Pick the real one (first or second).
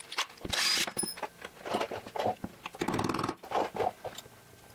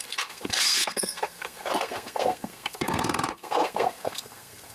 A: first